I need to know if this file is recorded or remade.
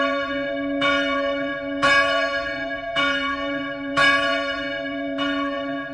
remade